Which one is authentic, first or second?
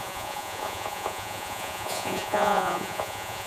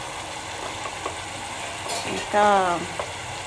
second